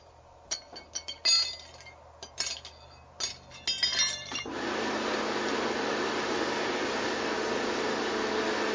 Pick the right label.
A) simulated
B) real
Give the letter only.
B